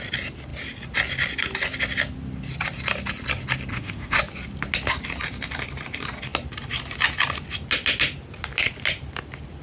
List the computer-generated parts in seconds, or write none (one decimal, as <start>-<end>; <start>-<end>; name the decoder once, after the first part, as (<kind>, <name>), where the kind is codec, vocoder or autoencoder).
3.7-4.2 (autoencoder, DAC-VAE)

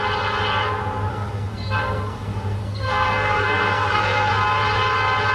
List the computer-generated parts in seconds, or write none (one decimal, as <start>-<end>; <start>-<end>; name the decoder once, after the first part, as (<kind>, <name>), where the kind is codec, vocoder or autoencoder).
1.1-4.3 (codec, SNAC)

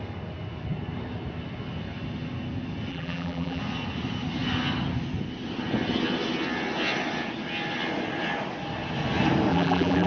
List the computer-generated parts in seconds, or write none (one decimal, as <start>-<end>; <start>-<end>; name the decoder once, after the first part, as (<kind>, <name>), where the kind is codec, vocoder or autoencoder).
2.9-3.6 (vocoder, BigVGAN v2); 9.5-10.1

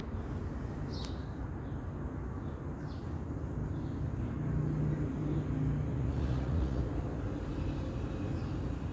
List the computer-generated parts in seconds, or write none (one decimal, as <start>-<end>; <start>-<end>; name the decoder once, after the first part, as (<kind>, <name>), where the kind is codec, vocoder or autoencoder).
5.9-6.8 (vocoder, Vocos)